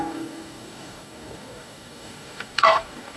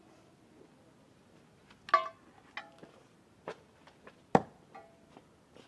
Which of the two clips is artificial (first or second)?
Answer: first